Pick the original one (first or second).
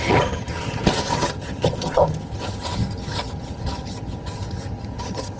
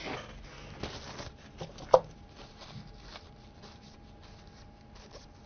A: second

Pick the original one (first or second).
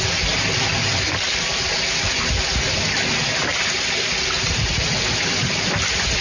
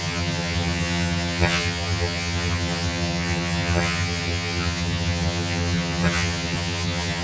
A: first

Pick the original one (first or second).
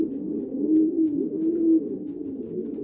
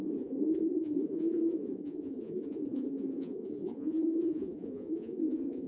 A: first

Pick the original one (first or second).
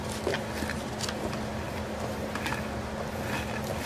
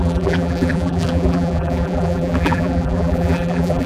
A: first